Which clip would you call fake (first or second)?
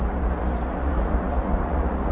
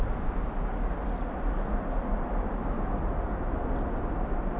first